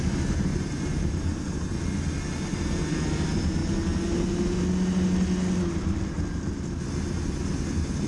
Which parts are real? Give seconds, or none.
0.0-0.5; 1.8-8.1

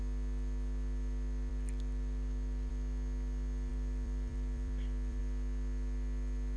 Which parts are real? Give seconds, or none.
0.0-1.5; 2.7-3.7; 5.2-6.6

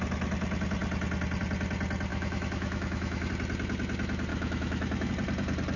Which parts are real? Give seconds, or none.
0.0-2.1; 3.3-4.3; 5.1-5.8

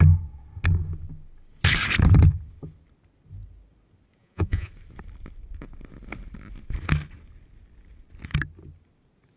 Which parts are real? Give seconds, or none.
0.0-4.2; 4.7-9.4

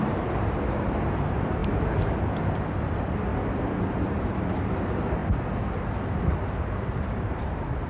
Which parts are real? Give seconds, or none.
1.6-2.9; 3.3-3.8; 5.2-6.2

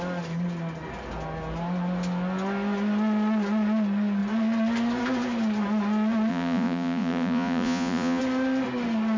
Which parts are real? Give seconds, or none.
0.0-6.3; 8.2-9.2